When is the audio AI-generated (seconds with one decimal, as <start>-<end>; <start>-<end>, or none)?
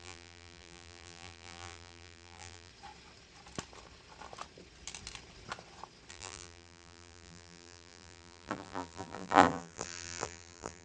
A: 0.0-2.7; 6.1-10.8